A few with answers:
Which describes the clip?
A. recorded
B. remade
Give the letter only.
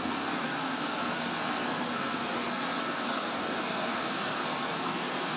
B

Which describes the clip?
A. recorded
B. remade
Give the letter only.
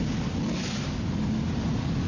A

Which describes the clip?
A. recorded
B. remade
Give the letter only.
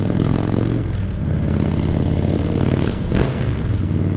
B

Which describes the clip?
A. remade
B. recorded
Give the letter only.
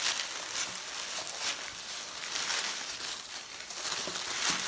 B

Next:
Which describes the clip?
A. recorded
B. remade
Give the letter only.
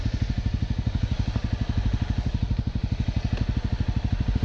A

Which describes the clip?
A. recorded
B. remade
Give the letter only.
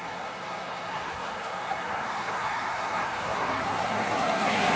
B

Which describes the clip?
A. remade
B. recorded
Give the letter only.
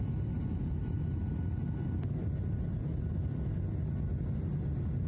B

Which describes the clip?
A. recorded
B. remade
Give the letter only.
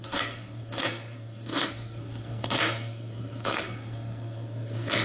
B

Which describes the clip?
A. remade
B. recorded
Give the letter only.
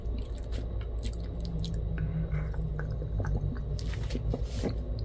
B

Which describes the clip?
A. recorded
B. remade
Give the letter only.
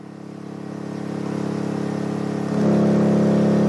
A